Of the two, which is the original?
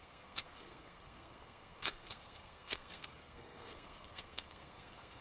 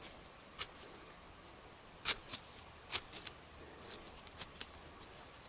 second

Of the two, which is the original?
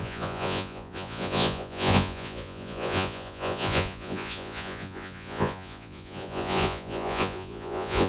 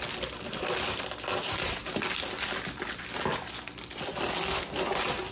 second